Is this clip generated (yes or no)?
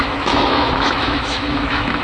yes